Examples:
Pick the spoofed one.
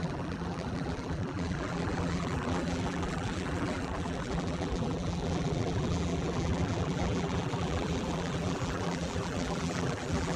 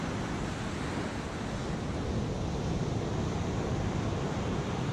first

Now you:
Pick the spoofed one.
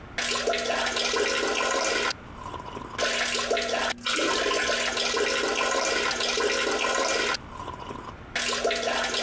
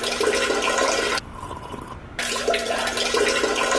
second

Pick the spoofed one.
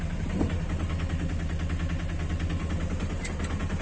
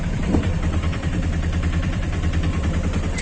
second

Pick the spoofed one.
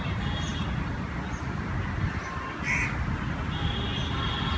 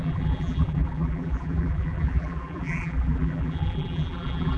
second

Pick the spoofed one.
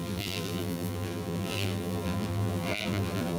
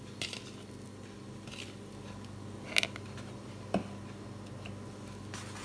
first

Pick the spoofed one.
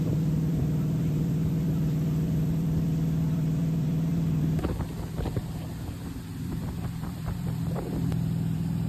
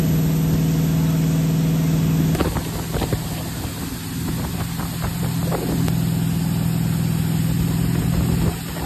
first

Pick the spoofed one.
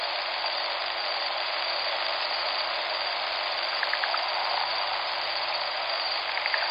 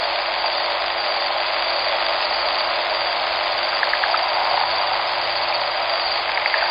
first